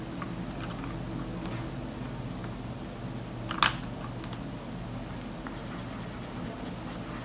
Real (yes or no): yes